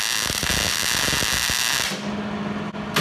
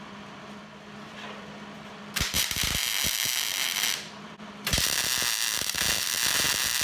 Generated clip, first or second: second